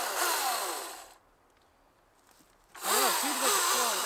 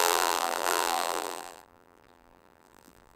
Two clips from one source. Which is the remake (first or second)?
second